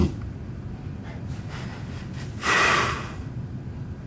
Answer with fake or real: real